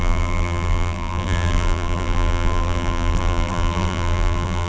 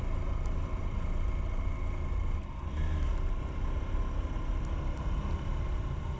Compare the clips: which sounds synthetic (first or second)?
first